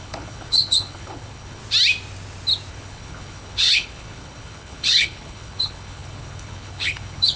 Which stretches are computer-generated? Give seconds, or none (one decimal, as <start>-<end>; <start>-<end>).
0.0-1.6; 2.7-7.4